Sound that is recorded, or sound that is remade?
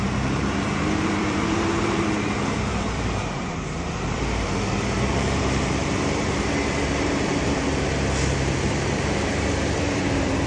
remade